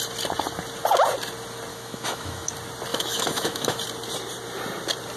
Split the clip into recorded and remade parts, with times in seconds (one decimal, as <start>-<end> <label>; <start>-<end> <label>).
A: 0.0-1.7 recorded; 1.7-2.5 remade; 2.5-2.9 recorded; 2.9-3.8 remade; 3.8-5.2 recorded